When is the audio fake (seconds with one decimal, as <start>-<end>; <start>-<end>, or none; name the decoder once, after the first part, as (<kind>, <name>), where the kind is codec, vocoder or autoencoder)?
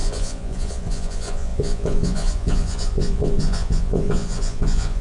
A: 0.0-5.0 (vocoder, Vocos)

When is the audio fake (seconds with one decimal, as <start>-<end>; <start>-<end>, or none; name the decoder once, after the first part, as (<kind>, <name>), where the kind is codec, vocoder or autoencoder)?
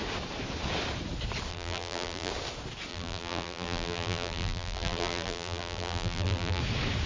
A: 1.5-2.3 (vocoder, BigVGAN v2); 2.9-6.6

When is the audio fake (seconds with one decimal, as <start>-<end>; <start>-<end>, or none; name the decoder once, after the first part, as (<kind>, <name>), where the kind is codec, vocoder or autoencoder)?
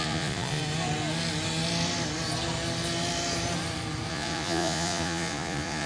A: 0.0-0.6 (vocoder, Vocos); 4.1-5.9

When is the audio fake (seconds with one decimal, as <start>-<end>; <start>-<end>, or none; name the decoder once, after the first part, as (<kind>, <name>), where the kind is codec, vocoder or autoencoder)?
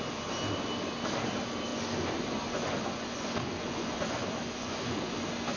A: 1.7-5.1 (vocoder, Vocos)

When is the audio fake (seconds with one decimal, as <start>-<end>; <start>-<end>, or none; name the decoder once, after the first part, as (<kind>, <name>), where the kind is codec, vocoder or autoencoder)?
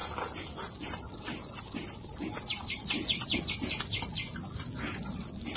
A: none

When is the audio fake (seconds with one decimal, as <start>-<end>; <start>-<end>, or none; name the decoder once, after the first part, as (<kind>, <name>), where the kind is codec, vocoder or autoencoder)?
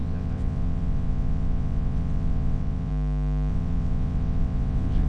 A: 0.0-2.9 (vocoder, WaveNeXt); 3.5-5.1